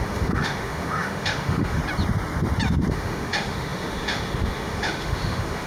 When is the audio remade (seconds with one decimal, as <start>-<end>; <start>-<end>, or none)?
0.0-1.8; 2.9-5.7